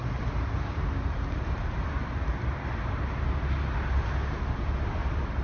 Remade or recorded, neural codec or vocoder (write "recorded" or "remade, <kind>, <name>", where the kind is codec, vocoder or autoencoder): recorded